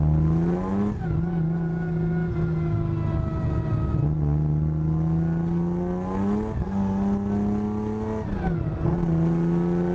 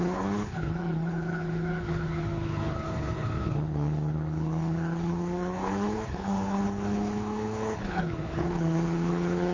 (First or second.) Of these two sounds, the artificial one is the second